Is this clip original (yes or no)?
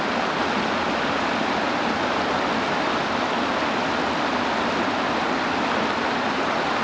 yes